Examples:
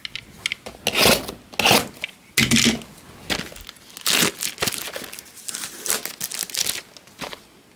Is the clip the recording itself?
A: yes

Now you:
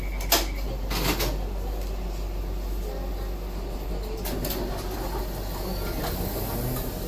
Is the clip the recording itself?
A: yes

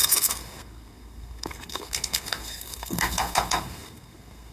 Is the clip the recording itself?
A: no